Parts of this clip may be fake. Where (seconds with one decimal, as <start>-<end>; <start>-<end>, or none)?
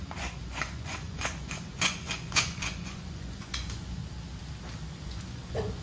0.0-4.0; 4.9-5.8